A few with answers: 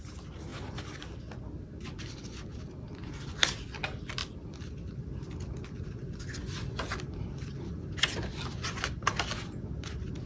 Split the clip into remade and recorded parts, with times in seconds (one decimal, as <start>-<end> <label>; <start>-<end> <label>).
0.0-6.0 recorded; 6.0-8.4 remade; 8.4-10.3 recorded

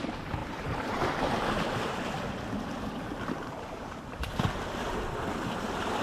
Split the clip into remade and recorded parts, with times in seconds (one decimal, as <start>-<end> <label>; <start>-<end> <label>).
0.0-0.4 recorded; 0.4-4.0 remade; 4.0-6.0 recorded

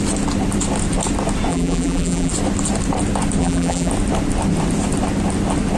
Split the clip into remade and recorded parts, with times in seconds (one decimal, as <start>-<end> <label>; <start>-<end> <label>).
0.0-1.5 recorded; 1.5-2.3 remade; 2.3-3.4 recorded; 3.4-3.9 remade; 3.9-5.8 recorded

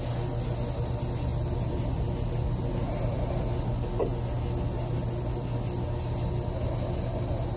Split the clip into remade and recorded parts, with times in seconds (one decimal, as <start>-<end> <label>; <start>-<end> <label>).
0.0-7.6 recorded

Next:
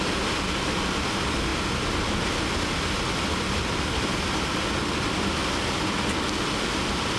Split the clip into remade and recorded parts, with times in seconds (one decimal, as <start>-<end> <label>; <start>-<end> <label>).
0.0-7.2 recorded

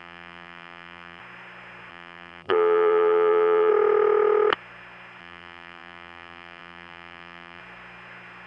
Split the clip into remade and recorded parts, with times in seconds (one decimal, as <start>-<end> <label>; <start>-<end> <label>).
0.0-1.2 remade; 1.2-1.9 recorded; 1.9-3.7 remade; 3.7-5.2 recorded; 5.2-7.6 remade; 7.6-8.5 recorded